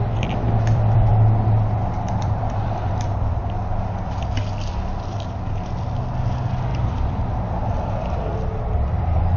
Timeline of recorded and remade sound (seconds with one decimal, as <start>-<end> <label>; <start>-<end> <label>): 0.0-1.1 remade; 1.1-2.1 recorded; 2.1-3.4 remade; 3.4-6.1 recorded; 6.1-9.4 remade